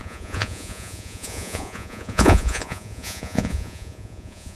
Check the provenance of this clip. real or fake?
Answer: fake